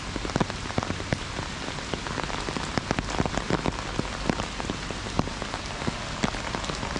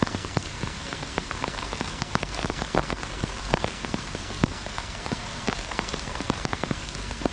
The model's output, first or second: second